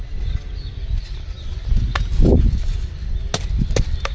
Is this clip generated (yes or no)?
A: no